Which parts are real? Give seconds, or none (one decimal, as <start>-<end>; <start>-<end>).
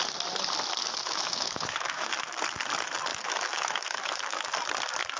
0.0-0.8; 2.1-3.1; 4.5-5.2